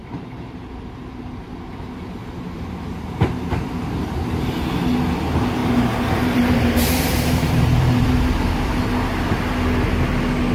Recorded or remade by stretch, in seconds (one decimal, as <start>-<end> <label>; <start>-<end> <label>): 0.0-1.5 remade; 1.5-2.2 recorded; 2.2-4.6 remade; 4.6-5.6 recorded; 5.6-8.5 remade; 8.5-10.5 recorded